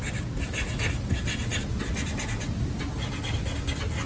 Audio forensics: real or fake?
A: real